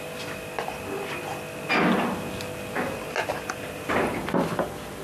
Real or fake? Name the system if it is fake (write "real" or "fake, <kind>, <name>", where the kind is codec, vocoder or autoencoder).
real